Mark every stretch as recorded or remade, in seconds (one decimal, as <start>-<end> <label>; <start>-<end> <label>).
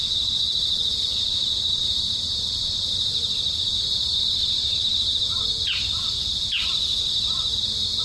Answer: 0.0-1.1 recorded; 1.1-5.4 remade; 5.4-8.0 recorded